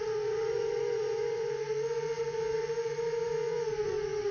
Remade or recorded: remade